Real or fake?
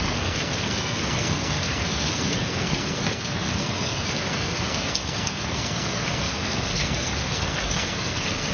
fake